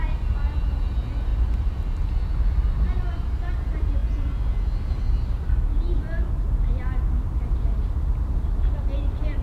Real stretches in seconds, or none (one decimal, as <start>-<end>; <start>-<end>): 0.0-9.4